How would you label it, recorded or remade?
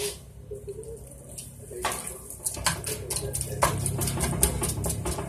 recorded